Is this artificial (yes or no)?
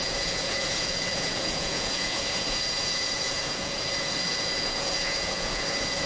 yes